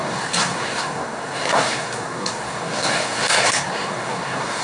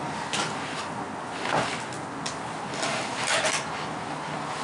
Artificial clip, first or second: first